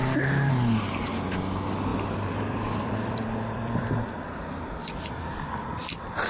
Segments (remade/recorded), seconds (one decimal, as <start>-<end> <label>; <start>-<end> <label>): 0.0-1.9 recorded; 1.9-5.1 remade; 5.1-6.3 recorded